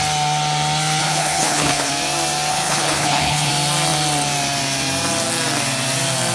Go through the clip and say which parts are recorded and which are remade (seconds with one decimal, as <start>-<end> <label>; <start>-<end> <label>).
0.0-1.0 recorded; 1.0-1.9 remade; 1.9-2.5 recorded; 2.5-3.5 remade; 3.5-6.3 recorded